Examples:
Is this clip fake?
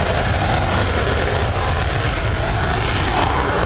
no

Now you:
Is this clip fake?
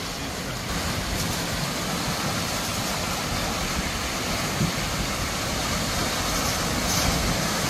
no